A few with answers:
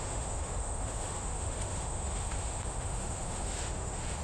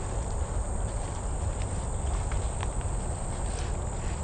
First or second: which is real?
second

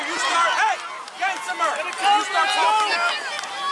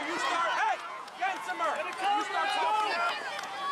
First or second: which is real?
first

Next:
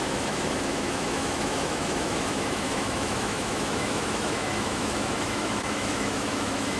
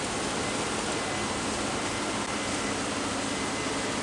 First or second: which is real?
second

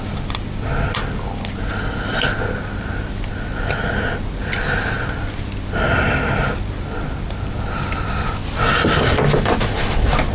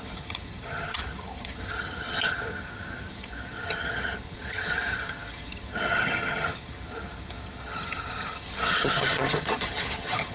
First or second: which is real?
first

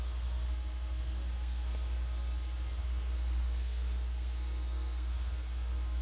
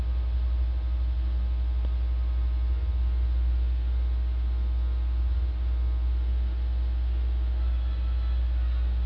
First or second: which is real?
second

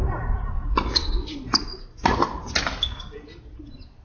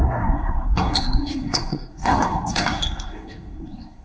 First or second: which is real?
first